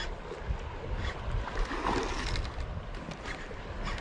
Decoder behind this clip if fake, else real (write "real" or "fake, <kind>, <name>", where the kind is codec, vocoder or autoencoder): real